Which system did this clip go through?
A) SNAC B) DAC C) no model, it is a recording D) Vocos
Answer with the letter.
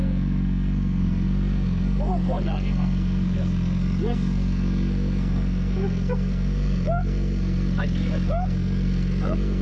A